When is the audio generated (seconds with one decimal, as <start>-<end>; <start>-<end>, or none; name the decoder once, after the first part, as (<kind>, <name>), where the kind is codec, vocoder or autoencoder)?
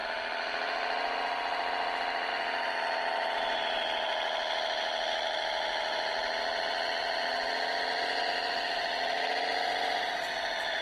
none